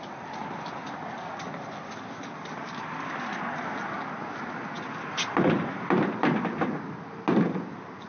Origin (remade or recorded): recorded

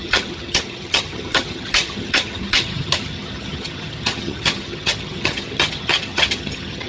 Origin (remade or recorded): remade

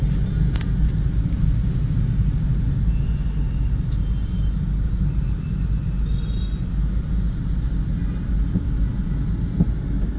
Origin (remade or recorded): recorded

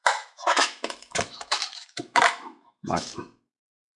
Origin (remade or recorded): remade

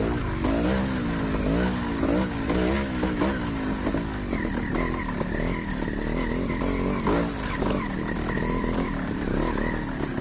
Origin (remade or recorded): recorded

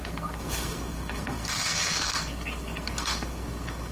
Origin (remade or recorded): remade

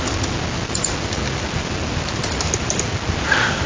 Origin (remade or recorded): recorded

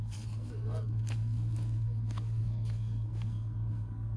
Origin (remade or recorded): remade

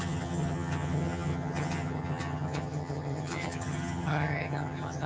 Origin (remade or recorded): remade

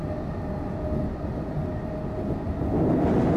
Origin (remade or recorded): recorded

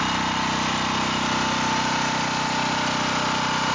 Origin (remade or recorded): recorded